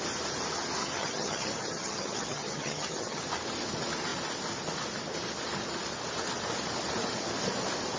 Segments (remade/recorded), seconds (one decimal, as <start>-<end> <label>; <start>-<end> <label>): 0.0-0.8 recorded; 0.8-3.2 remade; 3.2-8.0 recorded

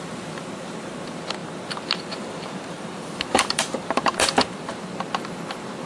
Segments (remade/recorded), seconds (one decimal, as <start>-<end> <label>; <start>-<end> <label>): 0.0-1.4 recorded; 1.4-4.7 remade; 4.7-5.9 recorded

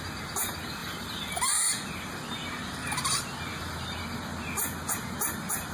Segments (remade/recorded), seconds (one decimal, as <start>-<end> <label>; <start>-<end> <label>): 0.0-0.8 recorded; 0.8-4.0 remade; 4.0-5.7 recorded

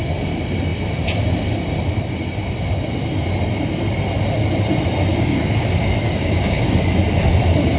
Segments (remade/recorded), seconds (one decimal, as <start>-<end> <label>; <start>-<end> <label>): 0.0-5.1 recorded; 5.1-6.8 remade; 6.8-7.8 recorded

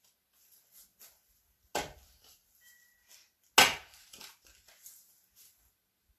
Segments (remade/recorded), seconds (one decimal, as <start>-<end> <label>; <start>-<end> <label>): 0.0-6.2 recorded

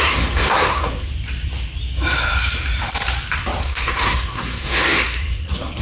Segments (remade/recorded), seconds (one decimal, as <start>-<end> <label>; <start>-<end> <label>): 0.0-1.1 remade; 1.1-3.6 recorded; 3.6-5.8 remade

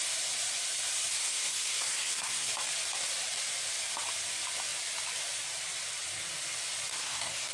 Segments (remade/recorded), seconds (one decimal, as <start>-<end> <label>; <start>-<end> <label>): 0.0-1.1 recorded; 1.1-2.5 remade; 2.5-6.9 recorded; 6.9-7.5 remade